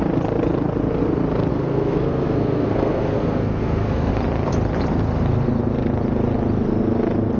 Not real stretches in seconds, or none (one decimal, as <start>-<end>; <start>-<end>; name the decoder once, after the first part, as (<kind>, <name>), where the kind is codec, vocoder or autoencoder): 1.5-4.1 (codec, SNAC)

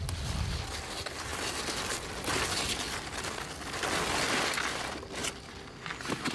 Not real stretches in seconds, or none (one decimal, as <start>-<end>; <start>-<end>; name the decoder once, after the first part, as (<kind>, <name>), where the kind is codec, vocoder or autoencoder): none

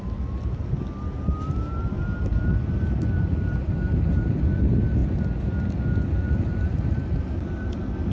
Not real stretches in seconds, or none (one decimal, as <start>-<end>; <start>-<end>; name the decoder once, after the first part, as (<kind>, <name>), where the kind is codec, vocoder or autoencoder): none

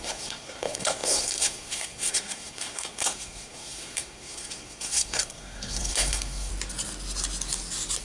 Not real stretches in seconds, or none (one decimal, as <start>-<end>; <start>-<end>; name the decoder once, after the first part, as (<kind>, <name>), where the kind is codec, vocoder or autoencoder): 0.0-6.5 (codec, SNAC)

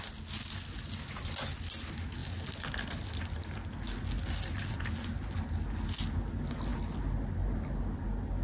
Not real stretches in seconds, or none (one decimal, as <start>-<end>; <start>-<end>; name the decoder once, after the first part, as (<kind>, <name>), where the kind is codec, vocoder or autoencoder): none

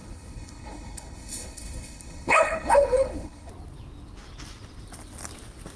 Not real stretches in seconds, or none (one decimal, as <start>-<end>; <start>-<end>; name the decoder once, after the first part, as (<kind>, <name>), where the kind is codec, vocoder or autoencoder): 0.0-3.5 (codec, HILCodec)

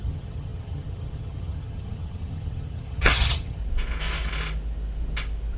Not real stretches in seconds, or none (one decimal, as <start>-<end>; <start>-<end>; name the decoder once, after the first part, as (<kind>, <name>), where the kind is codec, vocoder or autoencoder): 0.0-3.6 (vocoder, HiFi-GAN)

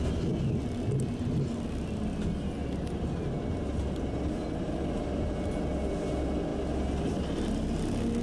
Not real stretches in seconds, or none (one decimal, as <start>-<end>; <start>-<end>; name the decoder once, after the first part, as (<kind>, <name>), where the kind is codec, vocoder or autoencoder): none